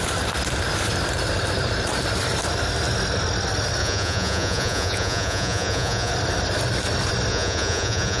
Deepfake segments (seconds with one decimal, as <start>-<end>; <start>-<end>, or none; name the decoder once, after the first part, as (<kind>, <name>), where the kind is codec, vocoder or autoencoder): 3.8-6.1 (vocoder, Vocos); 7.3-8.2